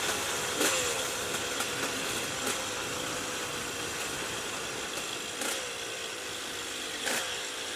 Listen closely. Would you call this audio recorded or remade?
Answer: recorded